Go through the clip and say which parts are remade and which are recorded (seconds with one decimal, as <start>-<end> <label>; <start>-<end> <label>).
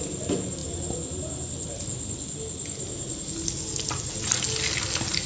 0.0-5.3 recorded